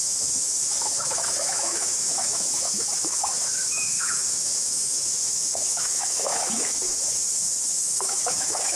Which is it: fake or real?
fake